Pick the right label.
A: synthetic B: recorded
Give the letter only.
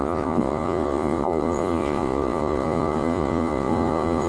A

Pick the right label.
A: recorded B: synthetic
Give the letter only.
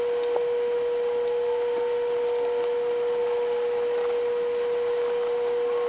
A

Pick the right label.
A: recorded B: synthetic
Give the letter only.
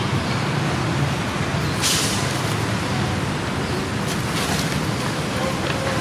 A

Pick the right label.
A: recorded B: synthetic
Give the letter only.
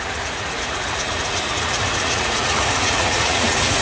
B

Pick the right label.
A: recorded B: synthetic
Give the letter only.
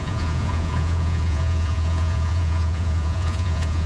B